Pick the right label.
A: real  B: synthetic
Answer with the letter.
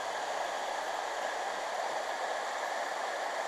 A